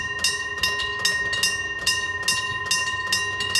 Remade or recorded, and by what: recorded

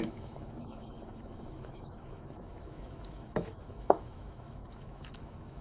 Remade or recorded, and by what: remade, autoencoder, DAC-VAE